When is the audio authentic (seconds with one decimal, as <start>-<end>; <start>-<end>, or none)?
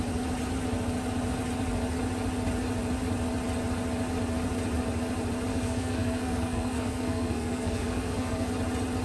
0.0-5.5; 8.5-9.0